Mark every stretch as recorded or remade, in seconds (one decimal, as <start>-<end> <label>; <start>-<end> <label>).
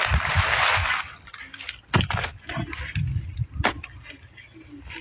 0.0-5.0 recorded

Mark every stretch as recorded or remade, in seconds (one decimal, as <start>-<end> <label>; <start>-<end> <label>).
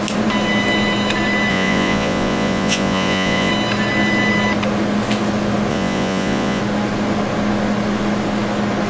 0.0-1.5 recorded; 1.5-3.5 remade; 3.5-5.7 recorded; 5.7-6.6 remade; 6.6-8.9 recorded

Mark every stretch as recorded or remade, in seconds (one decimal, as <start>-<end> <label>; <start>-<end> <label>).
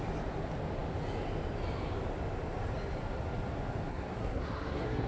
0.0-3.9 recorded; 3.9-5.1 remade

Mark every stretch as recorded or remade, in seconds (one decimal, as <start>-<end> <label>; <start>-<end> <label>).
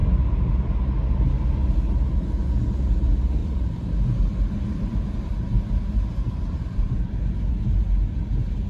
0.0-3.4 recorded; 3.4-6.9 remade; 6.9-8.7 recorded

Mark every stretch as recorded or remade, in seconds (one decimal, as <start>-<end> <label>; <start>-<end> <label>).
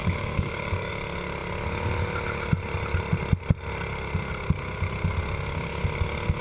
0.0-0.9 remade; 0.9-6.4 recorded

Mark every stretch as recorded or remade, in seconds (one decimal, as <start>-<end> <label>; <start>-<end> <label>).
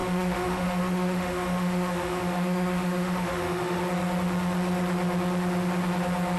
0.0-3.8 remade; 3.8-6.4 recorded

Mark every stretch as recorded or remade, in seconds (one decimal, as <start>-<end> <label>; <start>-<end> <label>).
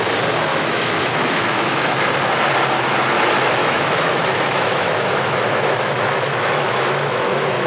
0.0-0.5 recorded; 0.5-2.0 remade; 2.0-3.6 recorded; 3.6-7.7 remade